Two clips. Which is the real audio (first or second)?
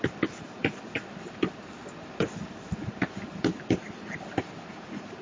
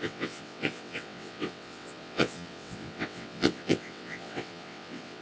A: first